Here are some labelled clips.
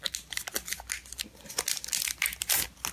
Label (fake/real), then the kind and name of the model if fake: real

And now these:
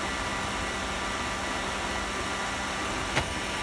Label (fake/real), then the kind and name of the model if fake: real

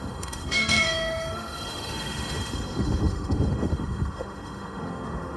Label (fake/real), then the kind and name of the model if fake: fake, autoencoder, DAC-VAE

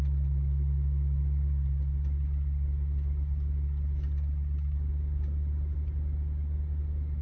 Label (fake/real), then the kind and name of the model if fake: real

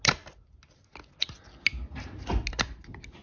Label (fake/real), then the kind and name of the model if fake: real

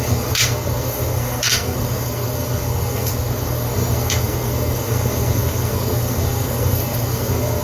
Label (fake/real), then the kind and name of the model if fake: fake, codec, SNAC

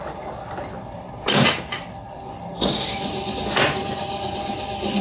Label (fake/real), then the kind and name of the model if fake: real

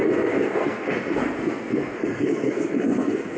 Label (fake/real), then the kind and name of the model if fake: fake, codec, SNAC